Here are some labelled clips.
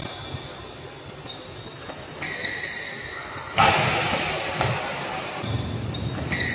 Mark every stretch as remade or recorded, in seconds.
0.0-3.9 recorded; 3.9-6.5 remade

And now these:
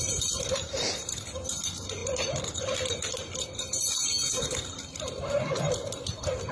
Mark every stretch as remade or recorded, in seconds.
0.0-6.5 recorded

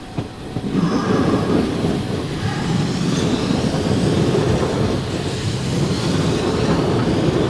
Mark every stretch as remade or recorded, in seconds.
0.0-7.5 recorded

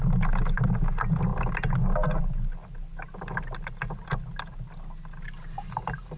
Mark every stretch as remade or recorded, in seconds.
0.0-6.2 recorded

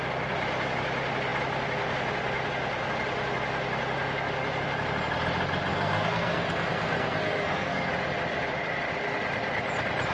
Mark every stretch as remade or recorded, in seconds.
0.0-5.7 recorded; 5.7-7.9 remade; 7.9-10.1 recorded

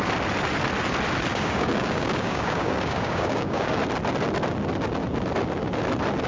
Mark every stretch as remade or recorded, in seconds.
0.0-1.3 recorded; 1.3-3.8 remade; 3.8-6.3 recorded

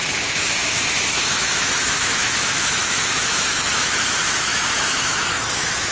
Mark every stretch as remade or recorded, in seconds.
0.0-5.9 remade

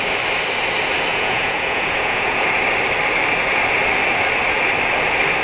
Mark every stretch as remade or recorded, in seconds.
0.0-1.1 recorded; 1.1-2.4 remade; 2.4-5.4 recorded